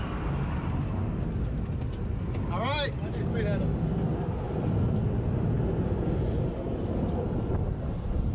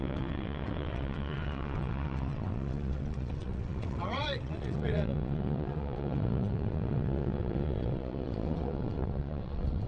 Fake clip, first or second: second